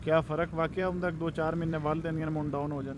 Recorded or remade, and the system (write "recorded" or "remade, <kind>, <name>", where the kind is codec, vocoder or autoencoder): remade, vocoder, BigVGAN v2